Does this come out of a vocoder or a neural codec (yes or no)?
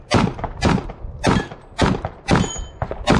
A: yes